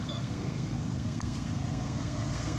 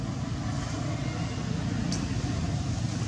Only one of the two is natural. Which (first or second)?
second